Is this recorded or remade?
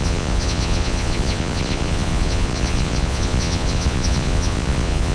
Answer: remade